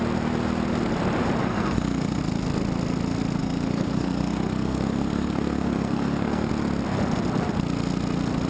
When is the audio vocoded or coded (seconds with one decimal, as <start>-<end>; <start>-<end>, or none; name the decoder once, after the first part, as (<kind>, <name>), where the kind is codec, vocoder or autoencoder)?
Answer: 1.4-2.2 (codec, SNAC); 3.4-6.5